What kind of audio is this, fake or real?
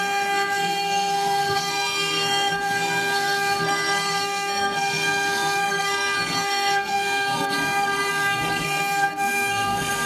fake